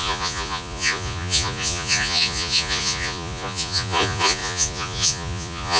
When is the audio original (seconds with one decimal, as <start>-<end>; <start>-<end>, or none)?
none